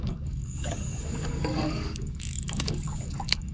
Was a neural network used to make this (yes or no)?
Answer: yes